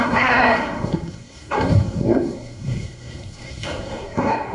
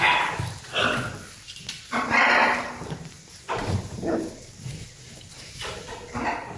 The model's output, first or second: first